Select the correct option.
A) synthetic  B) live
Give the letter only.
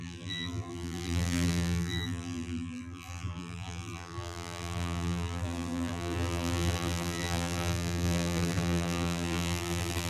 A